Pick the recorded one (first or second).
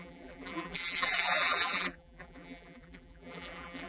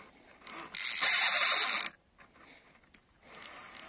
second